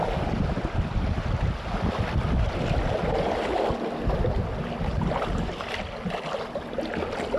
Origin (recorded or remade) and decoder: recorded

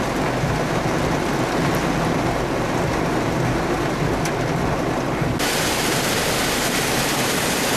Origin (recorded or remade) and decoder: recorded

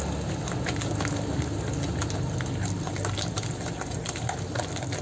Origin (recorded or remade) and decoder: recorded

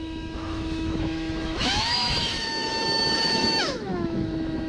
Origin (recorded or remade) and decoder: remade, autoencoder, DAC-VAE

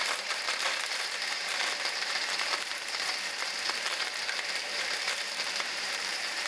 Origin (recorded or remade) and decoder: remade, vocoder, BigVGAN v2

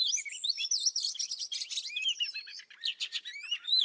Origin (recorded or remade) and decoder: remade, vocoder, BigVGAN v2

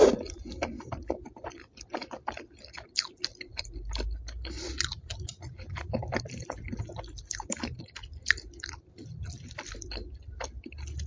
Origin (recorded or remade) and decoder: recorded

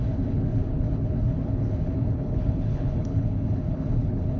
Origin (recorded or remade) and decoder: remade, codec, HILCodec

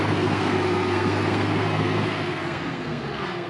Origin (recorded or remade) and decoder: remade, codec, SNAC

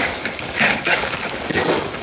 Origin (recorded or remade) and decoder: remade, codec, DAC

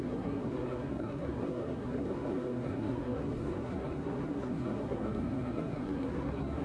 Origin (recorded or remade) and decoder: remade, codec, SNAC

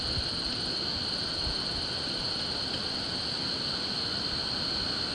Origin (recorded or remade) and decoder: remade, vocoder, BigVGAN v2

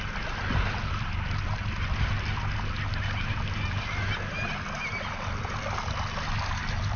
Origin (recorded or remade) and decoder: recorded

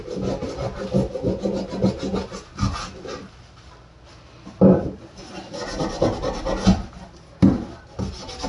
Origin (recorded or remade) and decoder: recorded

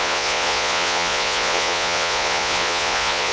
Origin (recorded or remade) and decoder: remade, vocoder, Vocos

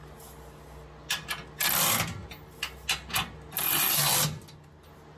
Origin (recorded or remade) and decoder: recorded